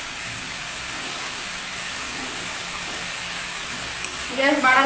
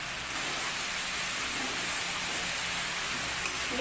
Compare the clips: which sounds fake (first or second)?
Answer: first